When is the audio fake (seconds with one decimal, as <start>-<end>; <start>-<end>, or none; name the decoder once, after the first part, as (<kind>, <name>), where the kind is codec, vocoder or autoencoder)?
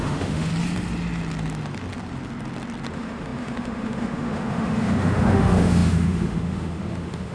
0.0-0.5 (autoencoder, DAC-VAE); 2.9-7.3